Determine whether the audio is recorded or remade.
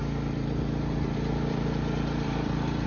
remade